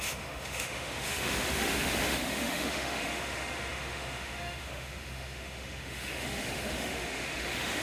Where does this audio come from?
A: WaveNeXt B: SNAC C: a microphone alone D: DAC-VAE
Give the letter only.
D